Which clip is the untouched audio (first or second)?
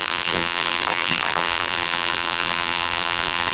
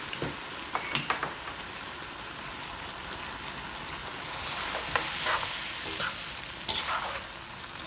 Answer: second